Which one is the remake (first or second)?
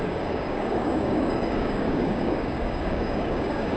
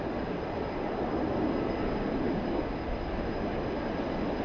first